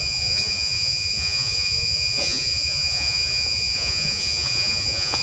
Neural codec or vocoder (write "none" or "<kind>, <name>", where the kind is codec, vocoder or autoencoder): vocoder, Vocos